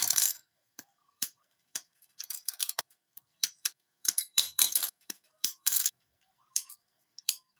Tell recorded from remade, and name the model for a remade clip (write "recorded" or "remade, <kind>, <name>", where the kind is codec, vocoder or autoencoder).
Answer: remade, codec, SNAC